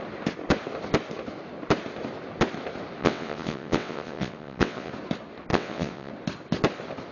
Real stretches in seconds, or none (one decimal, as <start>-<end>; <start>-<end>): 0.0-3.0; 4.9-5.5; 6.1-7.1